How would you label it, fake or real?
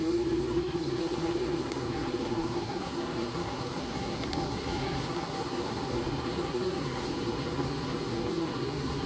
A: fake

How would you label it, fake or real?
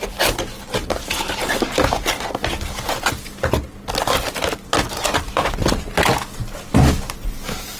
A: real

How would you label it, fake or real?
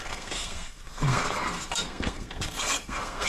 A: fake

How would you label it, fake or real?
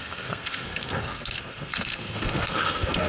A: fake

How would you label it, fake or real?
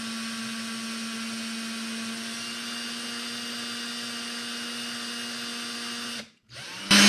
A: real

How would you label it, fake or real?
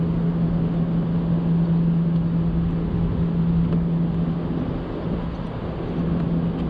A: real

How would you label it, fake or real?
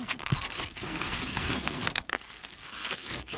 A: fake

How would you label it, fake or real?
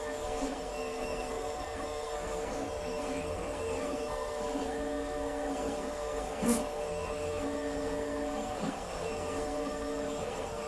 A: fake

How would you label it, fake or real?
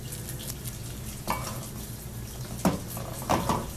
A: real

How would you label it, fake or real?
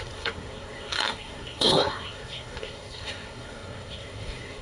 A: fake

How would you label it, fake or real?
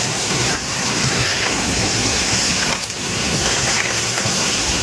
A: fake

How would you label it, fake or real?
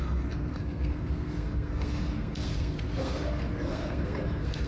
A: fake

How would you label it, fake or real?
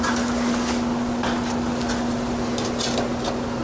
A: real